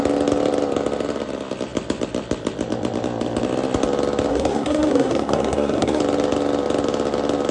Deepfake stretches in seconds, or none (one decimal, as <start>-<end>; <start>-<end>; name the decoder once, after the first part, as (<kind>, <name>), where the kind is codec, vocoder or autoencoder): 4.3-6.0 (codec, SNAC)